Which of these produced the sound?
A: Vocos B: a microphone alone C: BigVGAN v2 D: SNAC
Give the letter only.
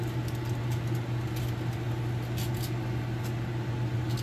B